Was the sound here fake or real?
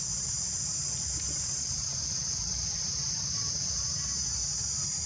fake